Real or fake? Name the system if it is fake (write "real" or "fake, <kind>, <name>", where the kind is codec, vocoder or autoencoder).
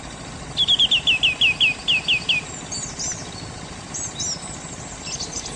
real